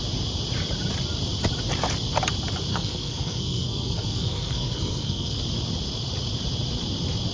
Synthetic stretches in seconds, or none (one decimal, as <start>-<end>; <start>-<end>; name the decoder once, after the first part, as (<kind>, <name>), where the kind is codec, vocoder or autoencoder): 2.7-5.4 (codec, SNAC)